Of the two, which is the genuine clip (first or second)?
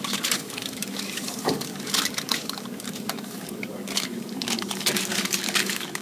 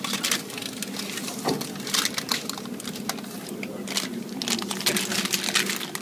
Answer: second